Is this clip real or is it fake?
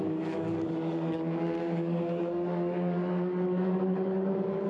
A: fake